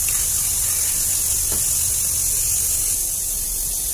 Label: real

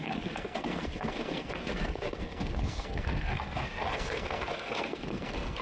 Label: fake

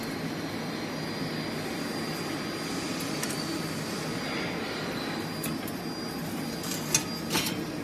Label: real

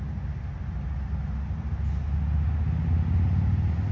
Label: real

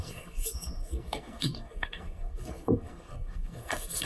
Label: fake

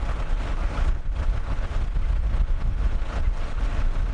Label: real